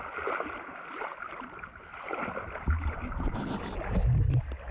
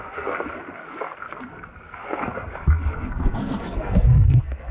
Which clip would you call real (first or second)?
first